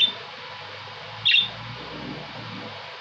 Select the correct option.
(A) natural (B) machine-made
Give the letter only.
A